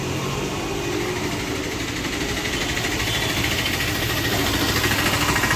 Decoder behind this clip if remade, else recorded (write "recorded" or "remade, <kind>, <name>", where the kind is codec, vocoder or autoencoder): recorded